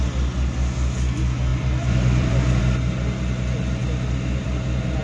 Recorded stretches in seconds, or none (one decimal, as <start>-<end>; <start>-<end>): 0.0-1.5; 2.6-3.8